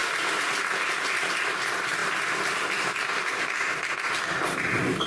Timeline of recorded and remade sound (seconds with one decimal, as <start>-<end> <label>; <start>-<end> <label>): 0.0-0.7 remade; 0.7-5.1 recorded